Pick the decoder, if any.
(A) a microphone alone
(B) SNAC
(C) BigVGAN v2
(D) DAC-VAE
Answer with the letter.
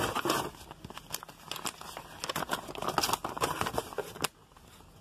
A